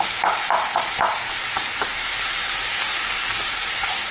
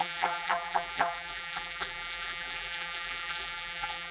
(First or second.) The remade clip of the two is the second